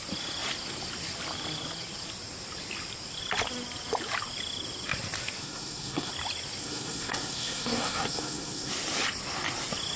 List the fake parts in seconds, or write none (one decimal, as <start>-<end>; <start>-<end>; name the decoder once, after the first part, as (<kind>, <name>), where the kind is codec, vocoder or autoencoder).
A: 5.4-6.1 (codec, SNAC); 6.6-8.7